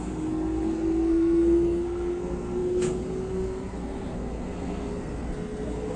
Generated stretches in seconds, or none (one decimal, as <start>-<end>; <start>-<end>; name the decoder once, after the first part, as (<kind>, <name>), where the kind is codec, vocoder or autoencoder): 0.0-6.0 (codec, SNAC)